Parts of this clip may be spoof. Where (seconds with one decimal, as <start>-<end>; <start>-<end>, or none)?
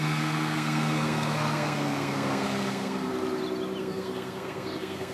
0.0-3.1; 3.8-5.1